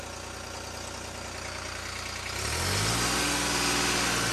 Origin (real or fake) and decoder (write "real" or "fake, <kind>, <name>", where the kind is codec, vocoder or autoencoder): real